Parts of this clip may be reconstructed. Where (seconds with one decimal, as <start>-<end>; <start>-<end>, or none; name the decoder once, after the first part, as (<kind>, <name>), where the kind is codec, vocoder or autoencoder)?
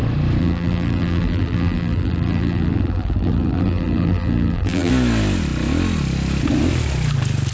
0.4-4.9 (vocoder, BigVGAN v2)